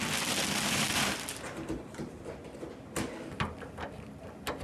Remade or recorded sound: recorded